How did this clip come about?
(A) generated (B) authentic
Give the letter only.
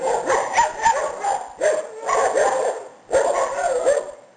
B